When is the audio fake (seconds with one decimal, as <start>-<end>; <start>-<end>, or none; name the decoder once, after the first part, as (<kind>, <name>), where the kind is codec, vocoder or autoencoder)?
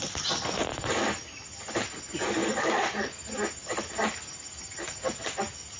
none